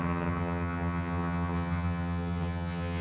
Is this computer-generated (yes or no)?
yes